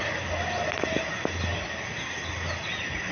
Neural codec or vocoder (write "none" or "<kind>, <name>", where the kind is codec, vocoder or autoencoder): none